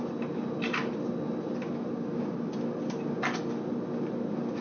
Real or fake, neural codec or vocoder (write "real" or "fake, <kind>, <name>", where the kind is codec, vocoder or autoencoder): real